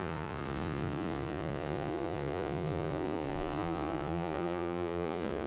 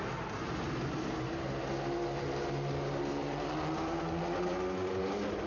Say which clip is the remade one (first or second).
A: first